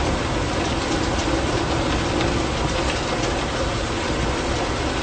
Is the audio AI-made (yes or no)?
no